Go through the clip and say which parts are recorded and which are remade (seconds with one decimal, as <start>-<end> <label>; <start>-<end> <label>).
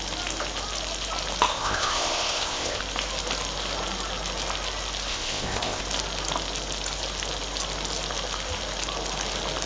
0.0-1.5 recorded; 1.5-2.8 remade; 2.8-5.1 recorded; 5.1-5.8 remade; 5.8-9.7 recorded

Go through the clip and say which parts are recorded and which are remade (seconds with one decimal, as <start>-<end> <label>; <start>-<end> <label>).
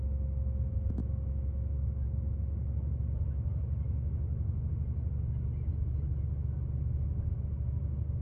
0.0-8.2 recorded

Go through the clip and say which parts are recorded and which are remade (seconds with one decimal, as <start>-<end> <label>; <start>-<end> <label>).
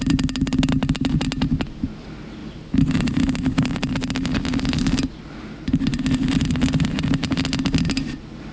0.0-8.5 recorded